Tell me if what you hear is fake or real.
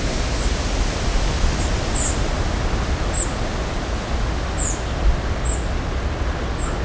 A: real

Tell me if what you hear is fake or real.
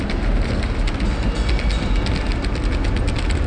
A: real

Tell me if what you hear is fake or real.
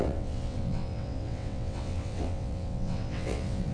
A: fake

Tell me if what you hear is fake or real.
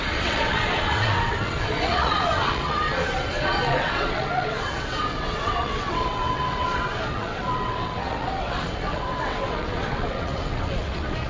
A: fake